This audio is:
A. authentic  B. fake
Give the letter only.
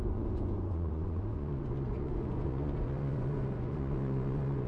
B